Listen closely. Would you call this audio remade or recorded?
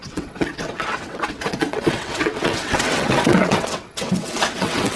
remade